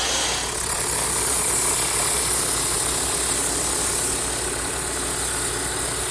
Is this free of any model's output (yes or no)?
yes